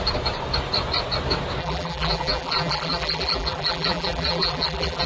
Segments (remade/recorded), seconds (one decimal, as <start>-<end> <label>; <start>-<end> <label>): 0.0-1.6 recorded; 1.6-5.1 remade